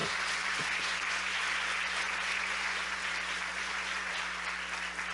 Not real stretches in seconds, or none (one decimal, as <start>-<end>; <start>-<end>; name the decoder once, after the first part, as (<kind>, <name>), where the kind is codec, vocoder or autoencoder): 0.0-3.1 (vocoder, Vocos); 3.5-4.1